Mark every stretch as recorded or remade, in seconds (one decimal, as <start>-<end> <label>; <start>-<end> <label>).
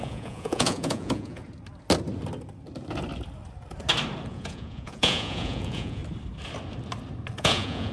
0.0-1.4 remade; 1.4-4.3 recorded; 4.3-6.0 remade; 6.0-7.4 recorded; 7.4-7.9 remade